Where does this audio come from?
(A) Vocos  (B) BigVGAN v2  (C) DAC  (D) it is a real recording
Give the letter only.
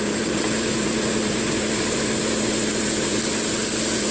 B